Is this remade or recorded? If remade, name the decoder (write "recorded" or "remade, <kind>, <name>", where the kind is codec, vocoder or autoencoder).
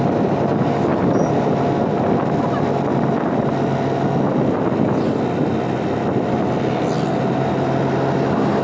recorded